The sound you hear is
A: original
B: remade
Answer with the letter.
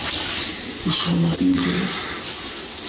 A